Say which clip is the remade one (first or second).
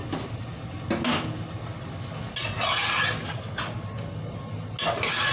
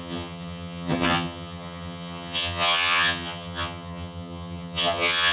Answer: second